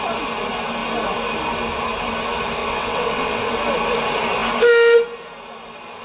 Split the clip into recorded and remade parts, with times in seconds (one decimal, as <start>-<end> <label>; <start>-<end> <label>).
0.0-2.6 recorded; 2.6-3.5 remade; 3.5-6.0 recorded